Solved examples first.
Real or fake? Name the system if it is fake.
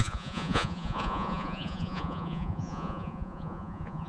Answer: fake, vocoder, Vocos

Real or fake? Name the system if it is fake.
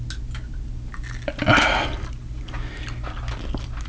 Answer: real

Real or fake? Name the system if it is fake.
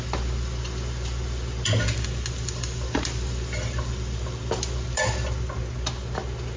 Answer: real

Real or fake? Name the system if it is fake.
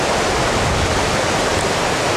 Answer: real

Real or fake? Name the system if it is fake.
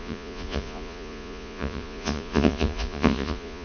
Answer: fake, vocoder, Vocos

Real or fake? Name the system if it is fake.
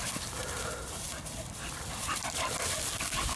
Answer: real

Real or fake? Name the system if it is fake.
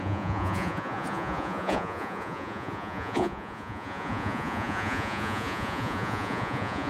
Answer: fake, vocoder, Vocos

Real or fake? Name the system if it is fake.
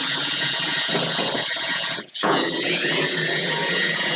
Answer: fake, vocoder, Vocos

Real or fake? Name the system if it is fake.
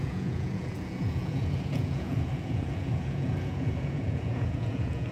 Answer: fake, vocoder, Vocos